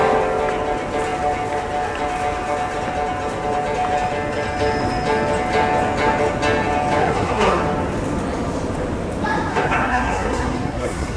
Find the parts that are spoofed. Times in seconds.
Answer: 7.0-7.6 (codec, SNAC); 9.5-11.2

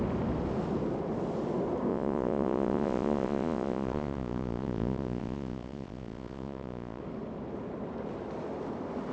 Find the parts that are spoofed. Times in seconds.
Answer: 1.9-7.0 (vocoder, Vocos)

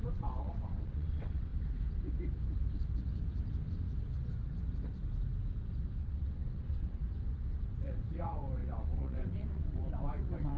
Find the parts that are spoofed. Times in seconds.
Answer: 0.0-1.5 (vocoder, WaveNeXt); 6.0-7.0; 7.8-10.6

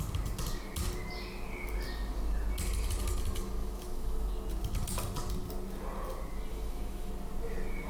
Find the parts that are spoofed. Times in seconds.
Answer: 3.6-4.3 (autoencoder, DAC-VAE); 6.5-7.1

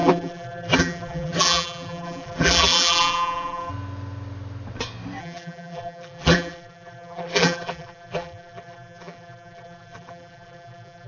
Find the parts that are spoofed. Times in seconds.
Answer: 0.0-3.7 (vocoder, BigVGAN v2); 5.2-11.1

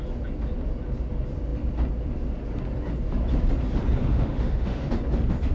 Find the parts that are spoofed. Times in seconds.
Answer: 4.0-4.9 (autoencoder, DAC-VAE)

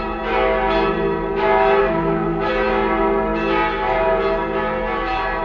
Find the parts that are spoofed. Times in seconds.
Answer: 1.8-2.5 (codec, SNAC)

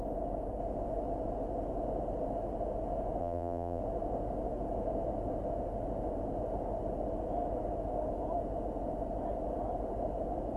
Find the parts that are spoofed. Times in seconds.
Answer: 3.2-3.8 (vocoder, BigVGAN v2)